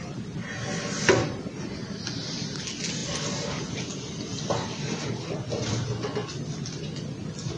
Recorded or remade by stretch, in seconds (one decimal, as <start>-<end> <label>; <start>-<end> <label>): 0.0-7.6 recorded